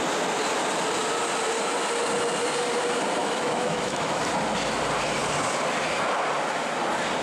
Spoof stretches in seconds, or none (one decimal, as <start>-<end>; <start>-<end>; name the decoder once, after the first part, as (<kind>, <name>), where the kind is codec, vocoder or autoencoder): 3.2-4.2 (autoencoder, DAC-VAE)